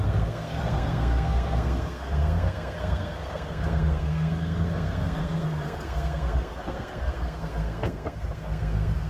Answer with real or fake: fake